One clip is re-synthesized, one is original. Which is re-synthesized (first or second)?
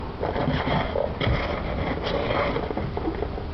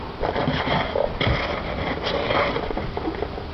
second